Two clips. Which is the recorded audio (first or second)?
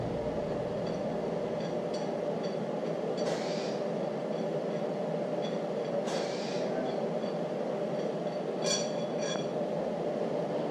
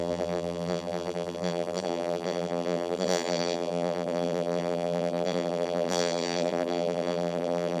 first